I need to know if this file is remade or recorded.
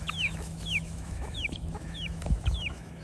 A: remade